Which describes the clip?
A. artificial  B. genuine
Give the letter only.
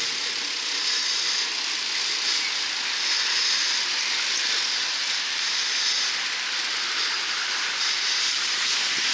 B